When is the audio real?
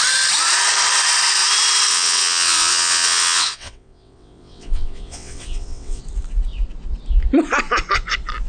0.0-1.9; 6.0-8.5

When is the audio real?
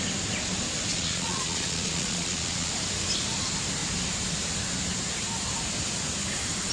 0.0-0.9; 2.7-6.7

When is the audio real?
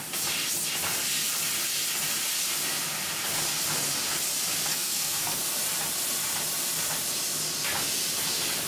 0.0-4.7; 5.4-8.7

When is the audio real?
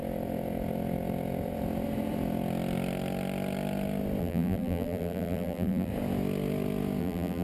0.0-4.2; 5.9-7.0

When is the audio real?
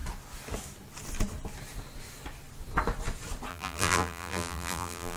0.0-3.5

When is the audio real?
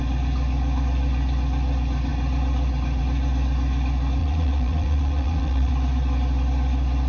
0.0-4.2; 5.7-7.1